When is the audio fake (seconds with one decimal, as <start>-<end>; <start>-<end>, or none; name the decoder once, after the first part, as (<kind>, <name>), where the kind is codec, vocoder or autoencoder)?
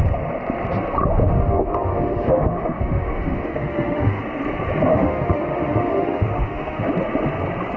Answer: 1.2-4.2 (autoencoder, DAC-VAE); 4.9-6.8